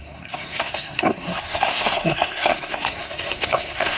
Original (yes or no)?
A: no